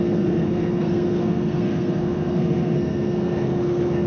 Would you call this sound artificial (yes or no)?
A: yes